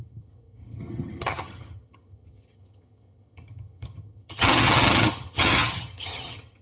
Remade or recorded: remade